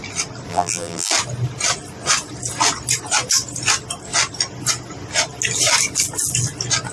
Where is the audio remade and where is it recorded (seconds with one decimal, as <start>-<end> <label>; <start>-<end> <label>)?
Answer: 0.0-0.5 recorded; 0.5-1.1 remade; 1.1-6.9 recorded